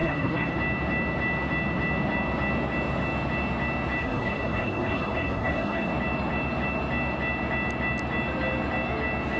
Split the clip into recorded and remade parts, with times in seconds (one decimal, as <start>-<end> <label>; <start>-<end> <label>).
0.0-0.5 remade; 0.5-4.0 recorded; 4.0-5.9 remade; 5.9-9.4 recorded